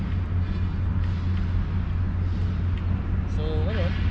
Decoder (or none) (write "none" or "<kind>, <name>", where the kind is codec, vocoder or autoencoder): none